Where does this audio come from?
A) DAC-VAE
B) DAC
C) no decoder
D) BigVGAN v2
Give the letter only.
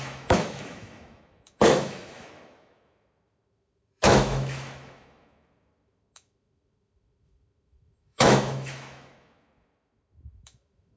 A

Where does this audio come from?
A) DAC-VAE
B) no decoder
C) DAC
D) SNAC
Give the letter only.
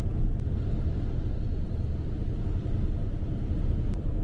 B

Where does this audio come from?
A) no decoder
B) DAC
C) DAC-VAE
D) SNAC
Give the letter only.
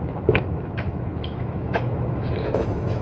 C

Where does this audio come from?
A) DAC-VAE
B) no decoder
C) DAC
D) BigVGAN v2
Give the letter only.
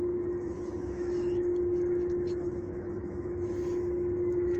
A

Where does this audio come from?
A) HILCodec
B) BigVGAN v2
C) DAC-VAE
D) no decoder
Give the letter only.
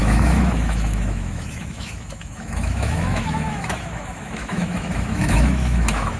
C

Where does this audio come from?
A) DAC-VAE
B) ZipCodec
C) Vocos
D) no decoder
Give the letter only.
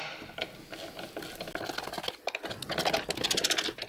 D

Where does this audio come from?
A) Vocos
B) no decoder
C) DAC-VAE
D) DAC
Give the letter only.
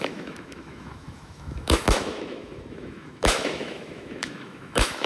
C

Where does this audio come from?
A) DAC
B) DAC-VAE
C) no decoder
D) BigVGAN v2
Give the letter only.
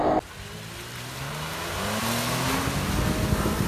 C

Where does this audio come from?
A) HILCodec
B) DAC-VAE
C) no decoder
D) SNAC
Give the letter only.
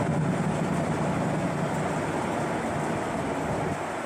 C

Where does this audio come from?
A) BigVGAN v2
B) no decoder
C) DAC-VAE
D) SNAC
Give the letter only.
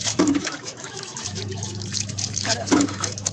C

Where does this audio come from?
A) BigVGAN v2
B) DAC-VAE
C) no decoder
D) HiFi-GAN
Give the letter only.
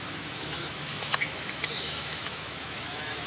B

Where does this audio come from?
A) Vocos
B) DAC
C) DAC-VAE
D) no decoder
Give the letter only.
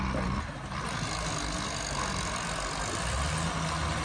D